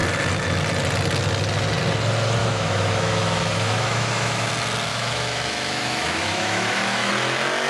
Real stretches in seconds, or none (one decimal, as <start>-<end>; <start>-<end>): 0.0-2.4; 4.5-4.9; 7.1-7.7

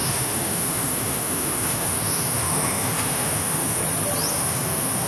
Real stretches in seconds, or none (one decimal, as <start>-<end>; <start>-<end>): 3.8-4.3

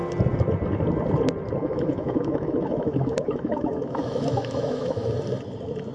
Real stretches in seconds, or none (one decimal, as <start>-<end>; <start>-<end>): 0.0-1.6; 5.1-5.9

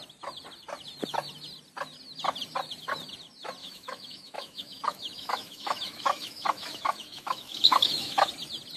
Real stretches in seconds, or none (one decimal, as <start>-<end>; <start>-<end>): 0.0-3.6; 8.3-8.8

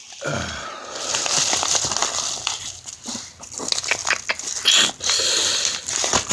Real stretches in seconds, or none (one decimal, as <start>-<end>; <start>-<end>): 0.0-6.3

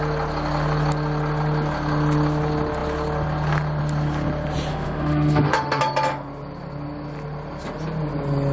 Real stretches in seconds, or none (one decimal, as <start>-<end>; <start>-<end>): 0.0-4.7; 5.8-8.5

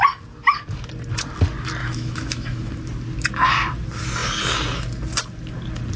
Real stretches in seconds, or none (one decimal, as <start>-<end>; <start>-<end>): 0.0-1.8; 2.7-6.0